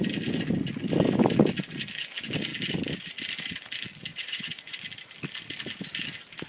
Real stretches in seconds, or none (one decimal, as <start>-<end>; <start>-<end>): 0.0-4.1; 4.8-6.5